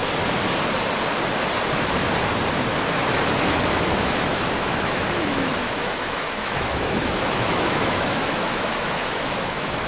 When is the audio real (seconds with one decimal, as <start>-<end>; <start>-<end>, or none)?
0.0-3.5